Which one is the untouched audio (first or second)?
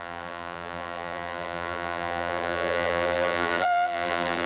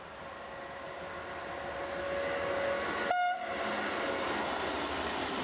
second